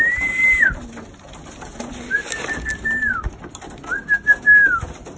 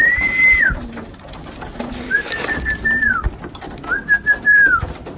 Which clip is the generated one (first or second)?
second